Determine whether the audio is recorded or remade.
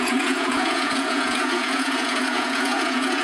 remade